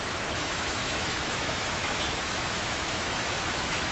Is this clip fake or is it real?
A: fake